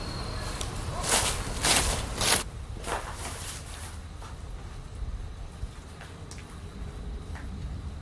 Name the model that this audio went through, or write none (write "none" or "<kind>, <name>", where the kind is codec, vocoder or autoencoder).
none